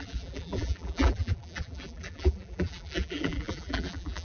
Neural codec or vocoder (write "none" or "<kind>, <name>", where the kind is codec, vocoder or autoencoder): vocoder, BigVGAN v2